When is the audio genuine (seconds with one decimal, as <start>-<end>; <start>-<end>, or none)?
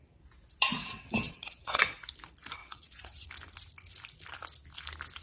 0.0-0.8; 1.8-2.6; 3.3-5.2